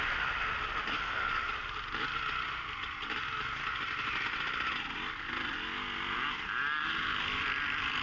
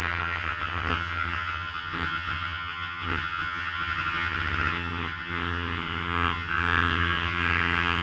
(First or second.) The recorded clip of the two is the first